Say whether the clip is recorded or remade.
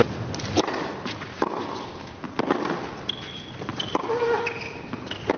recorded